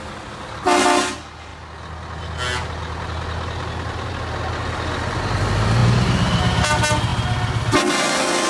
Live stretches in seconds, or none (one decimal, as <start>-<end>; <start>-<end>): 0.0-8.5